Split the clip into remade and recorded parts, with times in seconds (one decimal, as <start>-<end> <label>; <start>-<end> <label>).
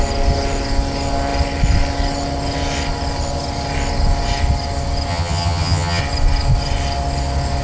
0.0-5.1 recorded; 5.1-6.0 remade; 6.0-7.6 recorded